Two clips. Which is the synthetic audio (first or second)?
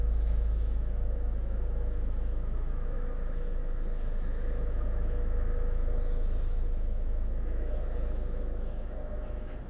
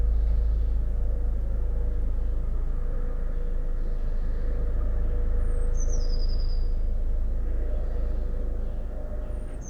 first